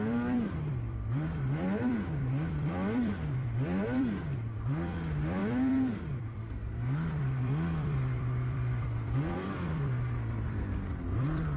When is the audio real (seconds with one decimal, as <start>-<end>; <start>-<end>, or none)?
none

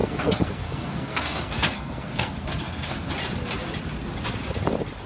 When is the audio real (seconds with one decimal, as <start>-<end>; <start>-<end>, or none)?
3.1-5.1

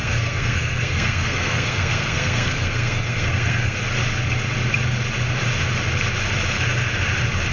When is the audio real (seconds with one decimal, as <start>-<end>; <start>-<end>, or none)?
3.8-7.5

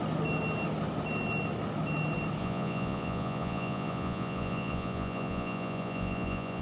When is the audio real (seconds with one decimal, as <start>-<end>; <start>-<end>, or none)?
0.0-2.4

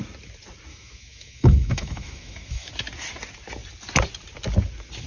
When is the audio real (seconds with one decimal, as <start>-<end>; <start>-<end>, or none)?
0.0-0.7; 2.7-5.1

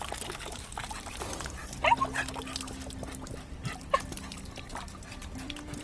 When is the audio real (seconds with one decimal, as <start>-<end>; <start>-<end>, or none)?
0.0-5.8

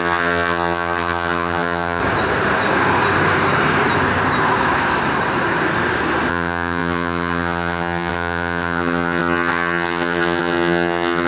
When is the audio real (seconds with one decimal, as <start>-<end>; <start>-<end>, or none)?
2.0-6.3